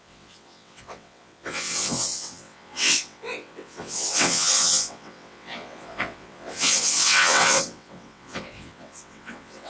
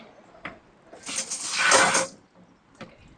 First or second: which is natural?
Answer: second